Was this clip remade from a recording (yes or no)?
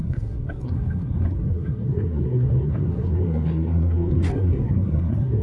yes